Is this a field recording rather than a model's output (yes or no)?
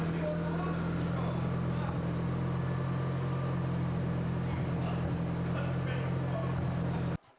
yes